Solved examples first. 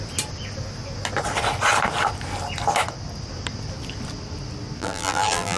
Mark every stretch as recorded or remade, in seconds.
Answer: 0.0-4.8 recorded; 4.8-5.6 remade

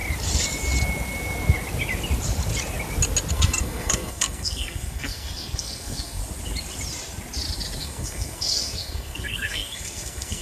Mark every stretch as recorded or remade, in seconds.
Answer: 0.0-3.3 recorded; 3.3-6.2 remade; 6.2-7.8 recorded; 7.8-10.4 remade

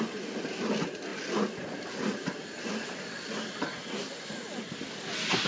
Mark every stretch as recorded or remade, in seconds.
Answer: 0.0-5.5 recorded

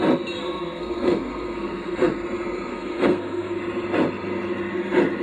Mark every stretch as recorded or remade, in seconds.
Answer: 0.0-0.4 recorded; 0.4-2.1 remade; 2.1-2.7 recorded; 2.7-3.6 remade; 3.6-5.2 recorded

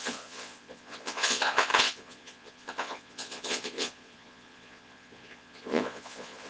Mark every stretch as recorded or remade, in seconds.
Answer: 0.0-6.5 remade

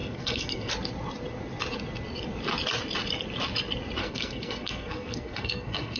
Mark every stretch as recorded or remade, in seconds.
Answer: 0.0-0.7 remade; 0.7-4.0 recorded; 4.0-6.0 remade

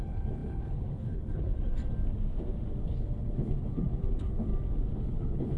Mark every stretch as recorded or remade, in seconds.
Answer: 0.0-1.8 remade; 1.8-2.8 recorded; 2.8-4.5 remade; 4.5-5.0 recorded; 5.0-5.6 remade

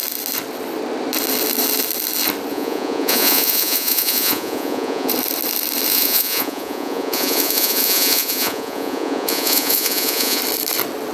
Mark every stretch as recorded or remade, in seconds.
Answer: 0.0-2.5 recorded; 2.5-5.1 remade; 5.1-5.9 recorded; 5.9-10.4 remade; 10.4-11.1 recorded